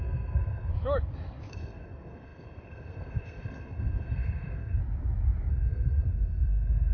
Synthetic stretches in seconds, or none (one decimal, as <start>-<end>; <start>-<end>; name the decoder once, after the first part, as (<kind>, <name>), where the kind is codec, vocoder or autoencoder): 0.0-0.7 (codec, SNAC); 1.5-4.8; 5.5-6.9